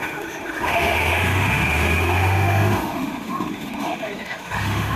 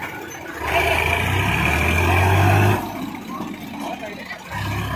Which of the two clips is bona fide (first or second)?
second